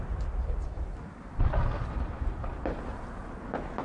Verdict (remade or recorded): recorded